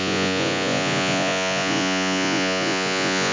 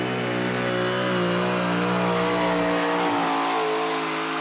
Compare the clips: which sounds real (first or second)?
second